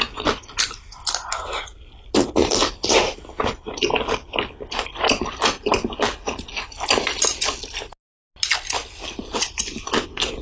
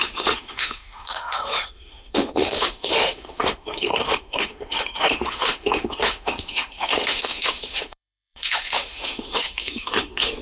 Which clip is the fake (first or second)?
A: second